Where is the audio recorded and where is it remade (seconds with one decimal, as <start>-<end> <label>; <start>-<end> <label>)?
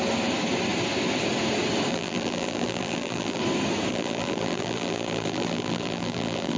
0.0-1.9 recorded; 1.9-3.4 remade; 3.4-3.9 recorded; 3.9-6.6 remade